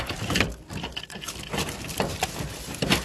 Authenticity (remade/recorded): recorded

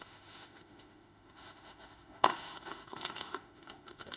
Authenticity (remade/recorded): remade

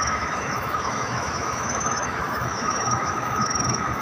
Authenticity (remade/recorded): remade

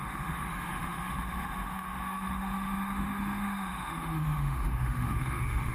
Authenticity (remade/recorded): remade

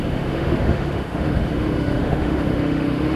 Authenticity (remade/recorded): remade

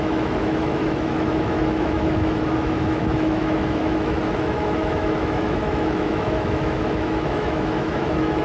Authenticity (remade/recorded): remade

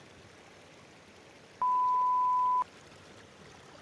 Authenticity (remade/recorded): recorded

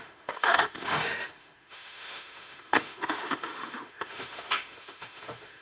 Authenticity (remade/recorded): remade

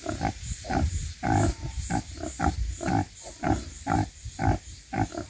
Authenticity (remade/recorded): recorded